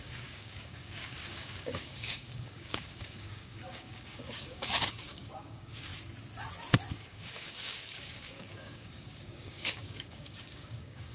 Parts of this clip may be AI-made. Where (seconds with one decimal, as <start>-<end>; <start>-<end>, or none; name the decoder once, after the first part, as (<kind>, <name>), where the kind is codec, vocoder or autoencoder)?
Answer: 0.0-5.9 (codec, DAC); 6.9-11.1